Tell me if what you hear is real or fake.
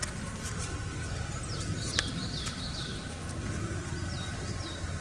real